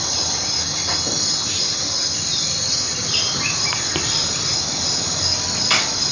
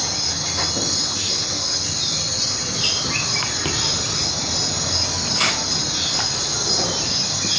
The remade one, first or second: first